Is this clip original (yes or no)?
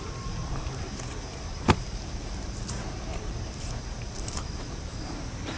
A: no